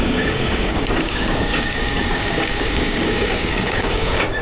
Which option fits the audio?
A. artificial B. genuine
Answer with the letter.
A